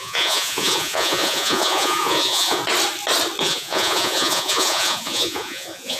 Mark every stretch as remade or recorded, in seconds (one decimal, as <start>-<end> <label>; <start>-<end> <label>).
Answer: 0.0-2.6 remade; 2.6-3.4 recorded; 3.4-6.0 remade